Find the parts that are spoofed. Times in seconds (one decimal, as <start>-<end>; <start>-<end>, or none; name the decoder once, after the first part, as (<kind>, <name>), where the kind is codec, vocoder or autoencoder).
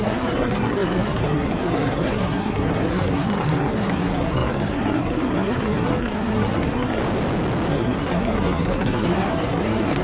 0.0-7.0 (codec, SNAC); 7.7-10.0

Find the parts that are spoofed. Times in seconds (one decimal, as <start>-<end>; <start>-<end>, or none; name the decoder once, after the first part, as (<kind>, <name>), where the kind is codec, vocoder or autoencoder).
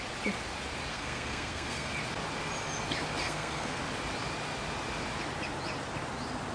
0.9-1.9 (codec, SNAC); 3.2-3.8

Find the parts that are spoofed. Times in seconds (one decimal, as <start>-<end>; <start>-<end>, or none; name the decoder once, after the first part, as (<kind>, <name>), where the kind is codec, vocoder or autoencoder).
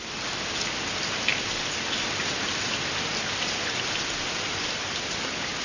none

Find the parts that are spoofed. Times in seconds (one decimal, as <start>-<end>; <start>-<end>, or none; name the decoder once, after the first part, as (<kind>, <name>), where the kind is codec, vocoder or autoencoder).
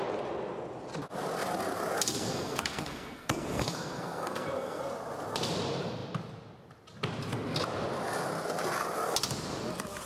2.1-4.8 (codec, SNAC)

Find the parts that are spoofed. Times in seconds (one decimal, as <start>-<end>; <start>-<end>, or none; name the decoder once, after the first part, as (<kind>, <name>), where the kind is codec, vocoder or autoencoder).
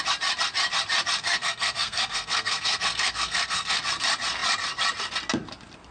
1.2-3.8 (codec, SNAC)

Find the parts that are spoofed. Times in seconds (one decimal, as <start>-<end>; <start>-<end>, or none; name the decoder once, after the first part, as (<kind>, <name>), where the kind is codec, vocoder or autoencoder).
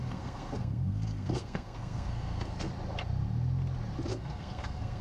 0.0-2.7 (codec, SNAC); 4.1-5.0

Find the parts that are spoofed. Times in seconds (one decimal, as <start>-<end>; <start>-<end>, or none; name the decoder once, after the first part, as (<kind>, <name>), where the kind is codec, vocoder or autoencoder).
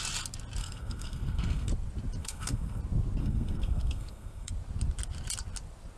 0.6-1.7 (codec, SNAC); 2.2-2.8; 3.2-4.5